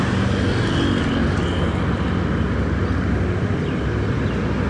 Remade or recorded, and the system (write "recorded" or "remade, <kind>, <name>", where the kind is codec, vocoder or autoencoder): recorded